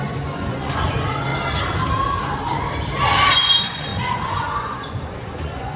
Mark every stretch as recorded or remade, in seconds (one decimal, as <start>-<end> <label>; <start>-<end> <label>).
0.0-1.3 remade; 1.3-3.3 recorded; 3.3-5.8 remade